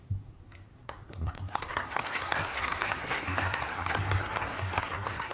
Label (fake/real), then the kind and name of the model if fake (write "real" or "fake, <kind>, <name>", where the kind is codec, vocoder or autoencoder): fake, codec, SNAC